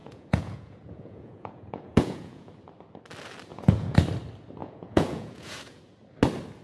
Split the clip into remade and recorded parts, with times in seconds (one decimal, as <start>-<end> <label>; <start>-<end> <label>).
0.0-2.5 remade; 2.5-3.5 recorded; 3.5-4.0 remade; 4.0-4.6 recorded; 4.6-5.8 remade; 5.8-6.6 recorded